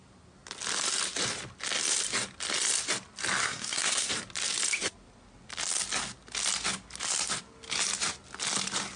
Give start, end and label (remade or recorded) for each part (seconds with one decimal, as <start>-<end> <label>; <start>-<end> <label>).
0.0-3.4 recorded; 3.4-4.1 remade; 4.1-9.0 recorded

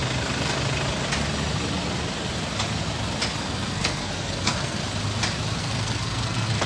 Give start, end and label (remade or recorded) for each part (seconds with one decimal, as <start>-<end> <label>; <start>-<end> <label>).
0.0-3.4 recorded; 3.4-4.8 remade; 4.8-5.6 recorded; 5.6-6.7 remade

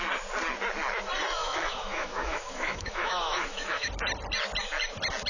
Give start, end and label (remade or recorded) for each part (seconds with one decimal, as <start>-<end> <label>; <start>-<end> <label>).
0.0-1.4 recorded; 1.4-3.9 remade; 3.9-5.3 recorded

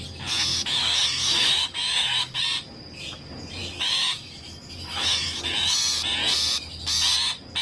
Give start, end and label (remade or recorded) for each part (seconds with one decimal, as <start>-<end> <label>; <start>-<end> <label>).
0.0-0.5 recorded; 0.5-2.4 remade; 2.4-3.6 recorded; 3.6-5.7 remade; 5.7-7.6 recorded

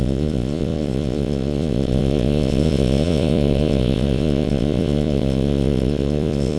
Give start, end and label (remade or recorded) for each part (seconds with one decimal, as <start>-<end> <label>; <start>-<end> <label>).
0.0-6.6 remade

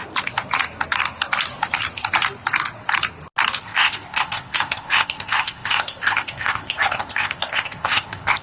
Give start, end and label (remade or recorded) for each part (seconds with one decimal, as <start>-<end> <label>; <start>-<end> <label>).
0.0-3.6 recorded; 3.6-8.4 remade

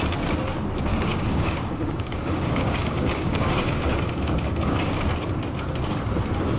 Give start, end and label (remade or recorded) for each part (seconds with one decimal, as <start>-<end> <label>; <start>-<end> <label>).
0.0-0.9 recorded; 0.9-4.9 remade; 4.9-6.6 recorded

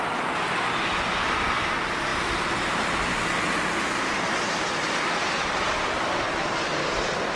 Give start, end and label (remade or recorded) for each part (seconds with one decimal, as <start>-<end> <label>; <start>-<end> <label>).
0.0-7.4 recorded